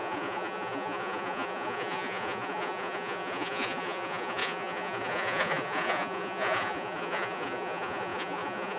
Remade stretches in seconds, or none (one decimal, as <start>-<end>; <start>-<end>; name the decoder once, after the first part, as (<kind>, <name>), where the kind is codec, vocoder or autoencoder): 0.0-8.8 (vocoder, Vocos)